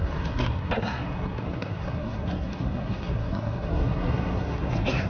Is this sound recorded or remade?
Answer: remade